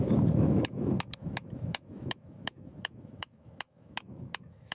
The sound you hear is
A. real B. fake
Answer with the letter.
B